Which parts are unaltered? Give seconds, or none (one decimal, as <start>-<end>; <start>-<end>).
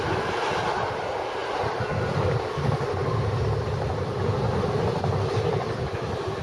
0.0-6.4